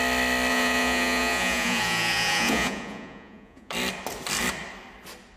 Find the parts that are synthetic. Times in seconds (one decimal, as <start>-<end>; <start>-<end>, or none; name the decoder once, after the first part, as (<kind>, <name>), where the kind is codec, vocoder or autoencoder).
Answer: 0.5-3.7 (vocoder, Vocos)